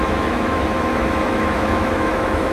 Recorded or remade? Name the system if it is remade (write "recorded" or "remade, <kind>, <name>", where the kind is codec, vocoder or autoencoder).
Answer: remade, autoencoder, DAC-VAE